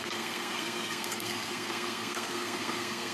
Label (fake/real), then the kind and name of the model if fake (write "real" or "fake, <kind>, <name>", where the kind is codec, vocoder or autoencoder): fake, codec, SNAC